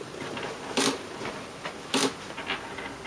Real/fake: real